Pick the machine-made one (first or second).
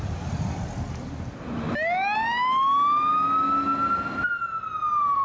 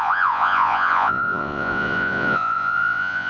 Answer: second